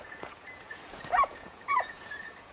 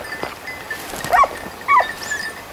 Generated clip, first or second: first